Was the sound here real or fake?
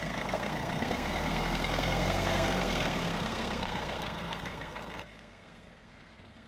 fake